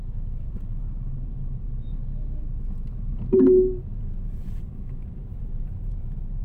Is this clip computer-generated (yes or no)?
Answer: yes